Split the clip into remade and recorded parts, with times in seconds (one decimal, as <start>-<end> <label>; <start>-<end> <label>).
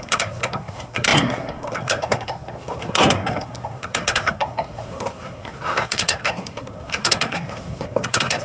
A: 0.0-8.4 remade